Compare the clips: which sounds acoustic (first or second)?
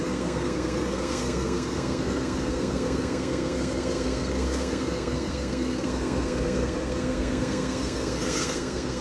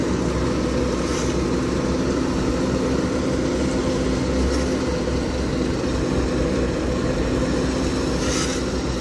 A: second